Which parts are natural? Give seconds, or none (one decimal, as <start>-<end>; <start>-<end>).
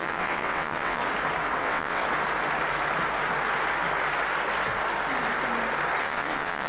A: 1.0-1.6; 2.0-6.0